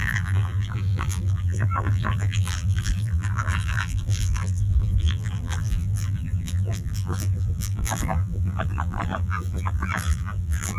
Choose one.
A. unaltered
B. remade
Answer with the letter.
B